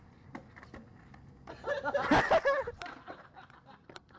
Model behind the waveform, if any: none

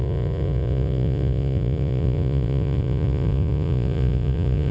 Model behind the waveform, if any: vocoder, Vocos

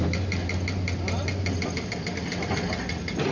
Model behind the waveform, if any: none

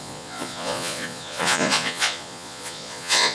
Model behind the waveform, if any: vocoder, Vocos